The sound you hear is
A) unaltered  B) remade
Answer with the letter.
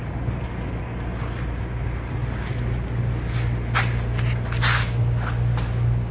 A